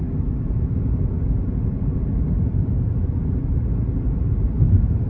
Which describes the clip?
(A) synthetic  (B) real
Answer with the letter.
B